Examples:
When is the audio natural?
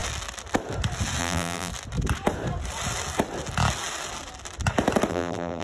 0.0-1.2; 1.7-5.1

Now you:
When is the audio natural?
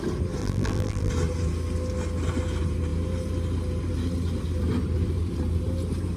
0.0-0.4; 1.1-6.2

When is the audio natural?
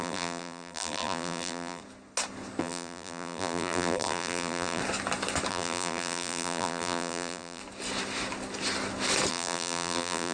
1.8-2.6; 4.8-5.5; 7.6-9.3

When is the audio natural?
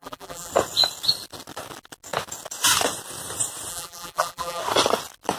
0.5-3.7; 4.6-5.4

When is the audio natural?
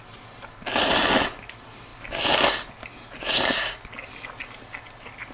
0.0-1.9; 2.7-5.3